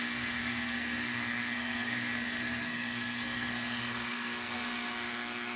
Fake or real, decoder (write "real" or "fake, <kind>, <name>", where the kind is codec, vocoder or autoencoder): fake, codec, SNAC